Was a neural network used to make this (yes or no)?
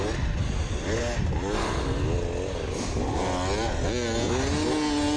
no